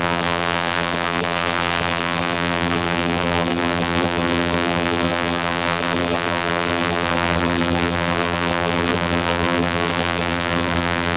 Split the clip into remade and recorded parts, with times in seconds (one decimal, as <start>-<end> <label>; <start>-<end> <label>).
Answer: 0.0-11.2 remade